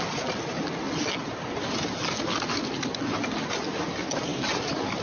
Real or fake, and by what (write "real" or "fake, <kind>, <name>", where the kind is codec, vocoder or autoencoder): real